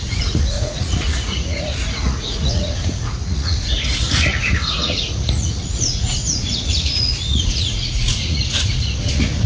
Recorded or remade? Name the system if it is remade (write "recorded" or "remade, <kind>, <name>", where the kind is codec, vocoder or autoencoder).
remade, vocoder, Vocos